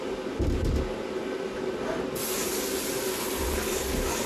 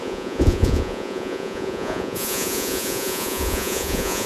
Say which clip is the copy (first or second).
second